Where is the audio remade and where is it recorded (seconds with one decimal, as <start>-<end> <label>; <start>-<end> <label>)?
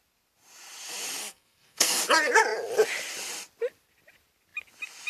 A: 0.0-1.2 recorded; 1.2-2.0 remade; 2.0-5.1 recorded